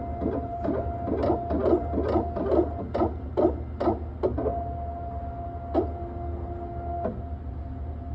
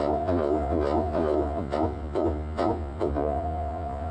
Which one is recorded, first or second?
first